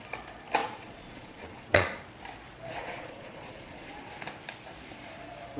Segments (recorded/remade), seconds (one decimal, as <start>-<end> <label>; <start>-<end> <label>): 0.0-0.6 recorded; 0.6-2.0 remade; 2.0-2.8 recorded; 2.8-4.1 remade; 4.1-5.6 recorded